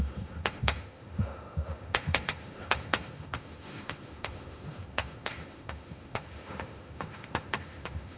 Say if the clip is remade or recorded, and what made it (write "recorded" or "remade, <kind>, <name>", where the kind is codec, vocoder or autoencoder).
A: remade, autoencoder, DAC-VAE